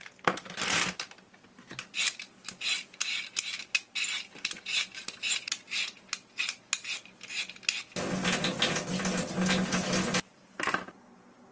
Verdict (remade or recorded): recorded